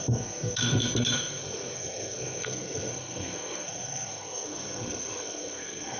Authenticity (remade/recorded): remade